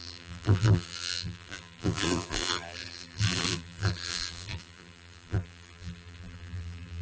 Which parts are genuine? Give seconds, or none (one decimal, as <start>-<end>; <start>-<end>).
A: none